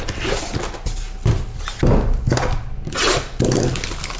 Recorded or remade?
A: recorded